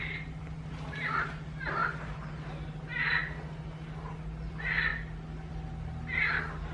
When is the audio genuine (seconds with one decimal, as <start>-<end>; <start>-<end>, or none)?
0.0-6.7